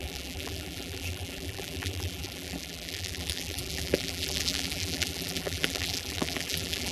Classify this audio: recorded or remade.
remade